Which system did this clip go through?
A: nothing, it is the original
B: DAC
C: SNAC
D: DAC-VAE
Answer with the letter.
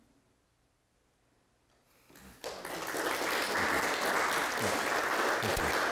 A